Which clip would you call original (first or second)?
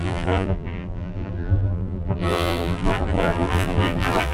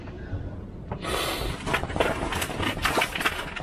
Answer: second